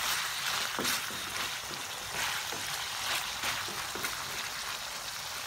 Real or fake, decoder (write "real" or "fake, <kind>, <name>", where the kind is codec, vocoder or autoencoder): real